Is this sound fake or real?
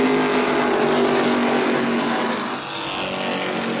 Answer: real